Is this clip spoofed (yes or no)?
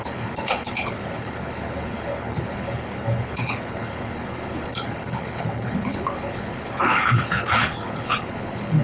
yes